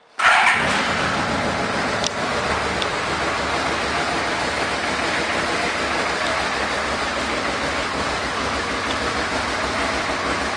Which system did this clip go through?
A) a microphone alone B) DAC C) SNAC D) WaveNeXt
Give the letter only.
A